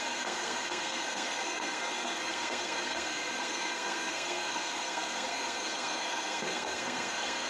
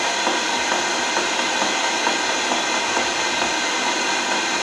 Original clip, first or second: second